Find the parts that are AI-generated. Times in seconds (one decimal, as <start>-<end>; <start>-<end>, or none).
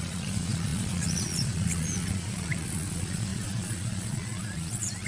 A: 0.0-5.1